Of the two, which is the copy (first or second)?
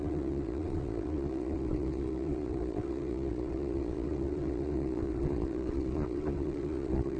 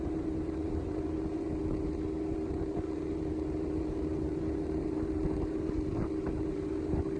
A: first